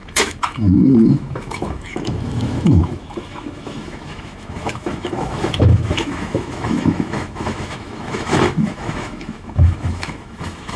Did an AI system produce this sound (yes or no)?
yes